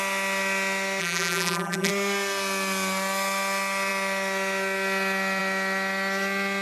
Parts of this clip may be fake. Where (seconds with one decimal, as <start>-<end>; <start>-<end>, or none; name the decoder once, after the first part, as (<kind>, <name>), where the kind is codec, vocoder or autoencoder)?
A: 1.0-1.9 (vocoder, BigVGAN v2)